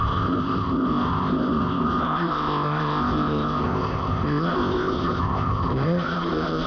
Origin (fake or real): fake